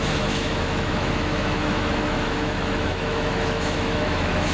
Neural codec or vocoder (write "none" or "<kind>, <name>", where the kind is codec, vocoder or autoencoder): autoencoder, DAC-VAE